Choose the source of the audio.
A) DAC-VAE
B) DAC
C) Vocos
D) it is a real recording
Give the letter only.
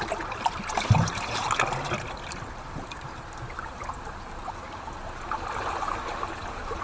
D